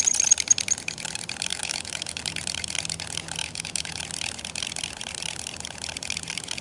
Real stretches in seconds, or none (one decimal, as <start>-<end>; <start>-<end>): 0.0-1.5; 2.2-3.4; 4.0-6.6